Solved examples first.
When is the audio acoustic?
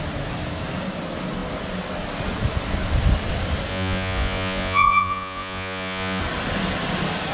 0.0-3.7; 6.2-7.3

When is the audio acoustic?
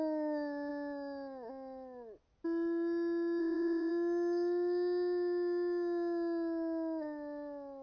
0.0-3.4; 3.9-7.8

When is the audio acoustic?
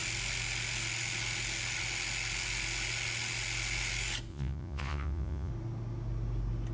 0.0-4.3; 5.5-6.7